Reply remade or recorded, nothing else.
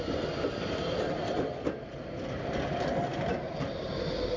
recorded